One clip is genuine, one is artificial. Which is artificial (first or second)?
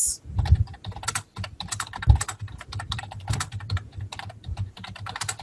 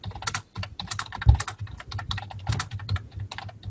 first